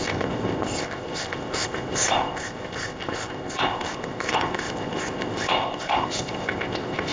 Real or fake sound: fake